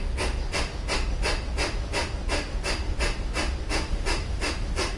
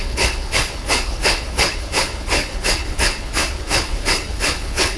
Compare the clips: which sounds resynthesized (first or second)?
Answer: second